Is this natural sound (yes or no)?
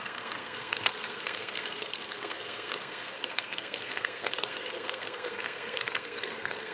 no